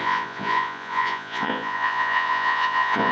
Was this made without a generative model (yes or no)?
no